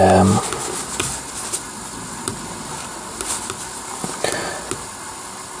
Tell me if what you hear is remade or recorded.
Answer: recorded